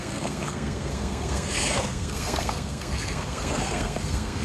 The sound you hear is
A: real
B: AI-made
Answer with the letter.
B